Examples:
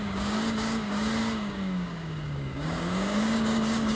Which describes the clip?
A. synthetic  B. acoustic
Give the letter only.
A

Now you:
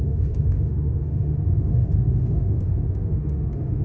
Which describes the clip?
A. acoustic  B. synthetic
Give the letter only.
B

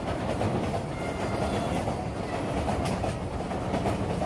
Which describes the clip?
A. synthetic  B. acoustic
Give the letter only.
B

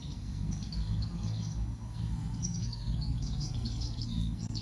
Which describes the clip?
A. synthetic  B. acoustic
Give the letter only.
A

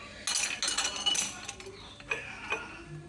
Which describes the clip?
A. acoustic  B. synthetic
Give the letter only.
A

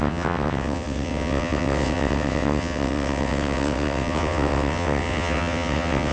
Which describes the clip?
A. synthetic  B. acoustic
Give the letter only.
A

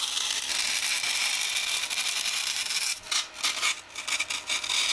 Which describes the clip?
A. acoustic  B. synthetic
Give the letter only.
A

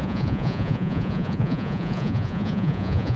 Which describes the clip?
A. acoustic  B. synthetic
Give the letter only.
B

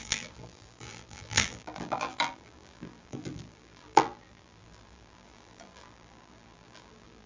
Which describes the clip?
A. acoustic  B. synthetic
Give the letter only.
B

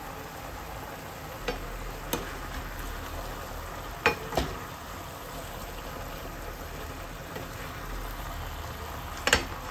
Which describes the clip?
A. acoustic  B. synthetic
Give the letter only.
A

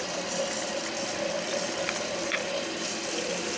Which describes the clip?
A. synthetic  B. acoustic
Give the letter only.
B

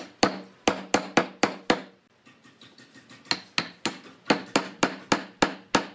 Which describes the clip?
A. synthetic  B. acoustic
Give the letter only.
B